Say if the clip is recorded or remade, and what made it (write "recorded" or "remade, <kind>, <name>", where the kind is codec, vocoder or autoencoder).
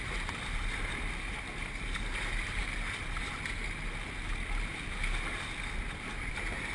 recorded